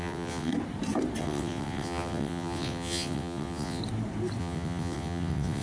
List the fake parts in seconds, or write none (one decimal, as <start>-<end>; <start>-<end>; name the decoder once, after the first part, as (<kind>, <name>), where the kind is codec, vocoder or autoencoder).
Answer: 0.0-0.5 (vocoder, WaveNeXt); 1.2-3.8; 4.4-5.6